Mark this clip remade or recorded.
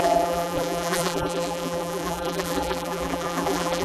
remade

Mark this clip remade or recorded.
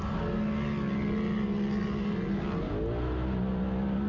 recorded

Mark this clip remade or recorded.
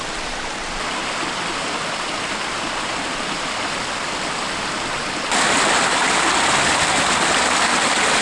recorded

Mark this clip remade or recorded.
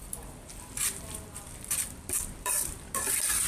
remade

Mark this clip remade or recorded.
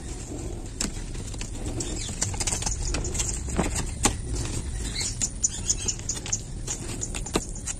recorded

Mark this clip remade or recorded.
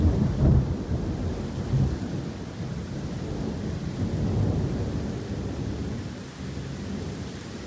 recorded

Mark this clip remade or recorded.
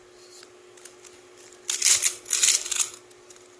recorded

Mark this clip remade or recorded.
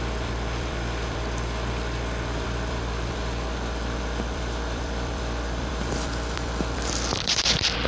remade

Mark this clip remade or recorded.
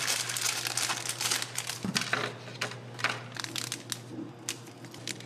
recorded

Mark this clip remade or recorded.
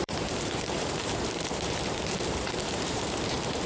remade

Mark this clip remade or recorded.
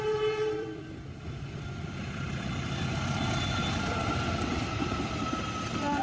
remade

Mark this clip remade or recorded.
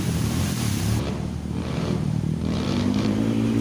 remade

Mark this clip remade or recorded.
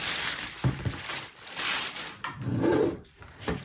remade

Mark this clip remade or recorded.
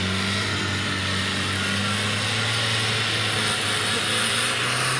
recorded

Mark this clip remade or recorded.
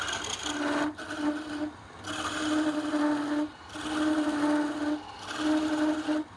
recorded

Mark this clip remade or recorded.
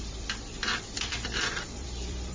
remade